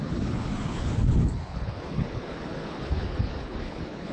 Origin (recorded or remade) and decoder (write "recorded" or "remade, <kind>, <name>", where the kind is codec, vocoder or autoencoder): remade, codec, HILCodec